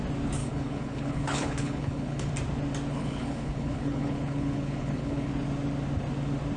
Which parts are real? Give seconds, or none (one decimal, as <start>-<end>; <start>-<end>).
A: 0.0-0.4; 2.3-3.0; 5.3-6.6